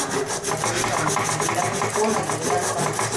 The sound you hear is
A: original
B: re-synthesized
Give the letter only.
A